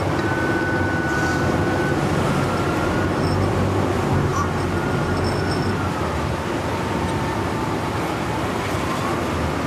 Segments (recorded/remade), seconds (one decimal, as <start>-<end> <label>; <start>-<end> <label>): 0.0-9.7 recorded